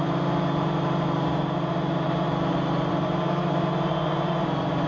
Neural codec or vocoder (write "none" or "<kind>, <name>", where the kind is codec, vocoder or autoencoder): vocoder, BigVGAN v2